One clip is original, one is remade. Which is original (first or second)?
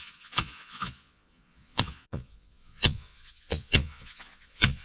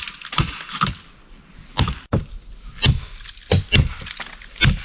second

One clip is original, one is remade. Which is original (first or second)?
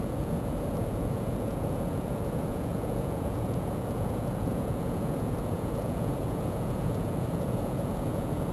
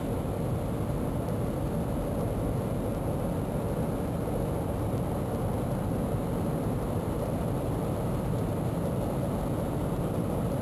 second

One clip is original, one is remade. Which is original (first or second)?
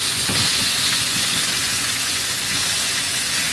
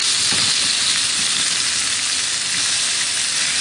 second